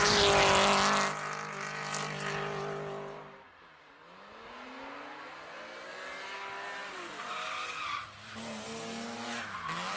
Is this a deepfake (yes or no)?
no